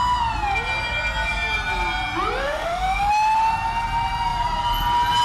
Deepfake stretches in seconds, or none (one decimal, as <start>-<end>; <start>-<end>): 2.4-3.1

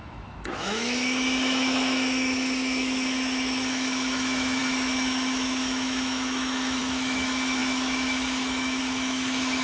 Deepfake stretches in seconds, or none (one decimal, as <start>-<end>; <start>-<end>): 0.0-9.6

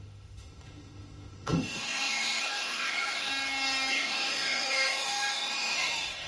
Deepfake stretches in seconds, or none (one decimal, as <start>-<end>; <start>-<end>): 0.0-3.3; 3.9-6.3

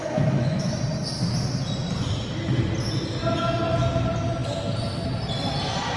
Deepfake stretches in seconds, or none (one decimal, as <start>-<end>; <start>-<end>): 0.0-0.8